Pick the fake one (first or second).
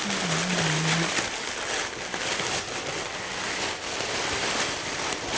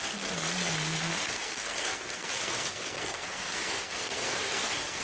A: second